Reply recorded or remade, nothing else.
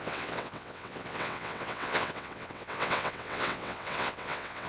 remade